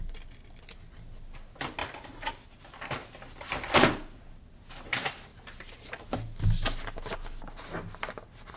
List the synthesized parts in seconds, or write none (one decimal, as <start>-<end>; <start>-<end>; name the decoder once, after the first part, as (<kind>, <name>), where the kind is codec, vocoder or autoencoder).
1.8-2.3 (vocoder, BigVGAN v2)